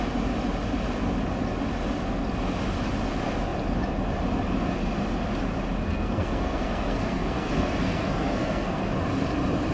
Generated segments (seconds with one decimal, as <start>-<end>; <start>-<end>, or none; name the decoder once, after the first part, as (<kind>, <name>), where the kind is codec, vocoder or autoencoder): 5.8-8.8 (codec, SNAC)

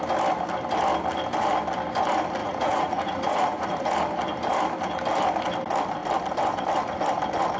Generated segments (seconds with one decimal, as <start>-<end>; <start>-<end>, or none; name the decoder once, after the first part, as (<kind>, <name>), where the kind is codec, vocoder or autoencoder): 2.4-3.9 (vocoder, Vocos)

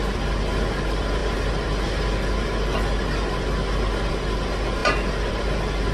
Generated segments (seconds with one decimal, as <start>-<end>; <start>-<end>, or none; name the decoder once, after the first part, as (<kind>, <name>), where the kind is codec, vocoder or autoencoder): none

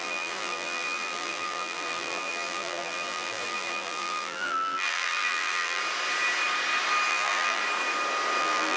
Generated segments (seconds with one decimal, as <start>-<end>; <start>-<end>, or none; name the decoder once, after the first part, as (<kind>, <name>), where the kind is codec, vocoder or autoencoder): 0.0-5.8 (vocoder, BigVGAN v2); 7.1-7.6; 8.4-8.8

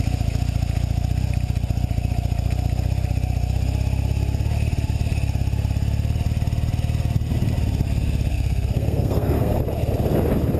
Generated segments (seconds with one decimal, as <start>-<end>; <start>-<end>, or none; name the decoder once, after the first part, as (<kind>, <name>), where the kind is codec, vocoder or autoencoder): 8.3-9.6 (codec, SNAC)

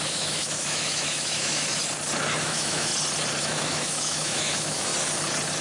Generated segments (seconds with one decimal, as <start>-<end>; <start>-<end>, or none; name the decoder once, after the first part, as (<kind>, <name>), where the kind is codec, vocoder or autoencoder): 0.0-1.7 (autoencoder, DAC-VAE); 2.4-2.9; 3.4-4.9

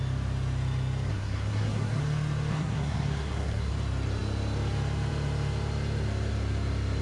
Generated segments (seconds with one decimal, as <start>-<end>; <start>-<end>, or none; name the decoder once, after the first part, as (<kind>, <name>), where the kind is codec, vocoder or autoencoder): 1.1-2.0 (codec, SNAC); 2.5-3.7

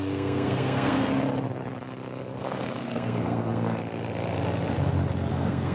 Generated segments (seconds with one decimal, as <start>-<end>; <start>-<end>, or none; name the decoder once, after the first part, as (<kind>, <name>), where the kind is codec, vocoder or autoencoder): 0.0-1.1 (codec, SNAC); 2.4-3.8; 5.3-5.7